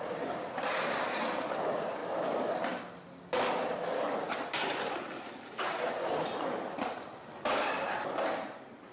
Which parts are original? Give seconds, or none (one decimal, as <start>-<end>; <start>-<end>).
0.0-8.9

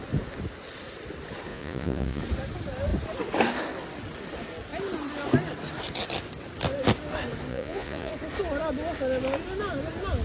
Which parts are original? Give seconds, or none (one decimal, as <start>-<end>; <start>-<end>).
0.0-1.5; 2.2-7.5; 8.1-10.2